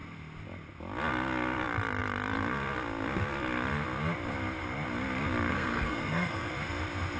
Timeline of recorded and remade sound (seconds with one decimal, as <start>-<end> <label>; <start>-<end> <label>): 0.0-5.5 recorded; 5.5-6.5 remade; 6.5-7.2 recorded